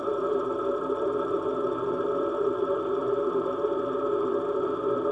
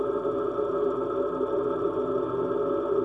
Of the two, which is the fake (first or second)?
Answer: first